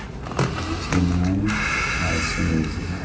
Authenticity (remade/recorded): recorded